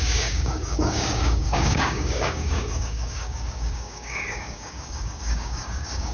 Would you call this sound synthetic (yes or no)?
yes